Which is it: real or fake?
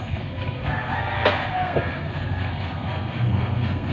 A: fake